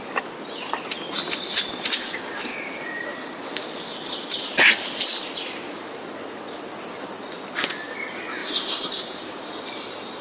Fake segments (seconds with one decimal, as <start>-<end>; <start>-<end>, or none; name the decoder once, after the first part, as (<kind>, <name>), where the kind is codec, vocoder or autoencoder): 8.4-9.5 (vocoder, BigVGAN v2)